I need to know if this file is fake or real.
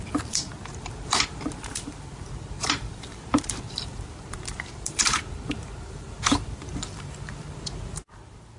fake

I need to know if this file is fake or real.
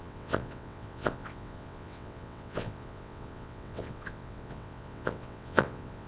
fake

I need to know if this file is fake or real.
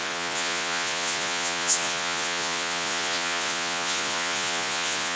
fake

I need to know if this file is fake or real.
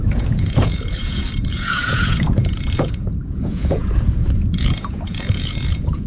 fake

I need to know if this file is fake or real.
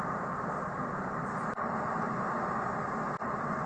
real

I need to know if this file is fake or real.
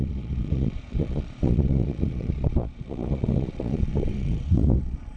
fake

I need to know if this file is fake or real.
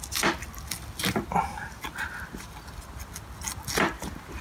real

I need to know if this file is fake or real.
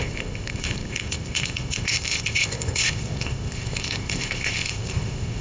fake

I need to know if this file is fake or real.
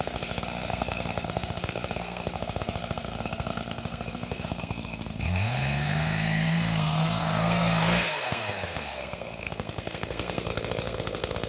fake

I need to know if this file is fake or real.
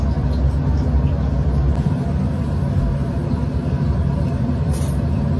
real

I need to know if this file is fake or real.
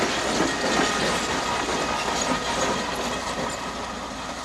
real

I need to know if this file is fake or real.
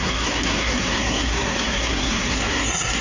fake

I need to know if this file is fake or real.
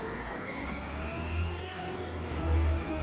fake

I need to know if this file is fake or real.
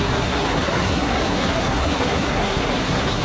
fake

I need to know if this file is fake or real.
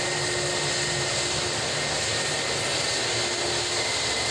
real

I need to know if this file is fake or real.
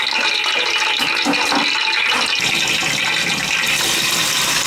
real